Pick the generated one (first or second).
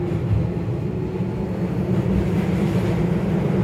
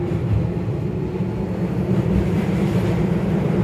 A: second